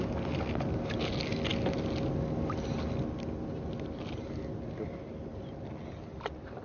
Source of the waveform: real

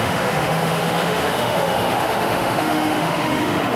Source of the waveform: fake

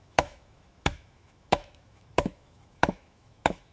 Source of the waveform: fake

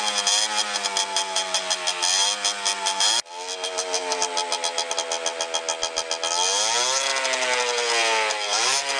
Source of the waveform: real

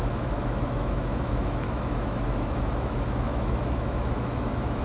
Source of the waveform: fake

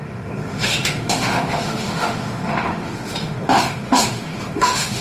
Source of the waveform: fake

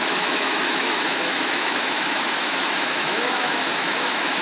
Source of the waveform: fake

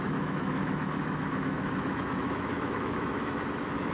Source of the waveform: fake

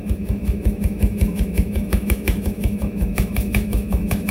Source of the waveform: fake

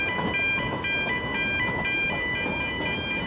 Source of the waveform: real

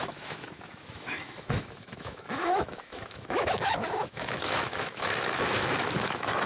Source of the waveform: fake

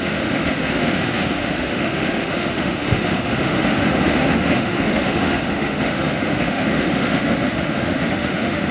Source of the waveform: fake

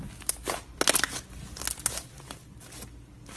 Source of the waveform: real